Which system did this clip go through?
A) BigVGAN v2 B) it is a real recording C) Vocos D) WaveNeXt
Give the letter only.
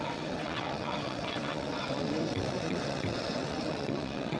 D